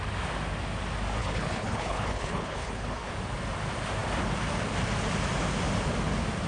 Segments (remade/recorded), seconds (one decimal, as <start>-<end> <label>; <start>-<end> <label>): 0.0-1.2 recorded; 1.2-3.1 remade; 3.1-6.5 recorded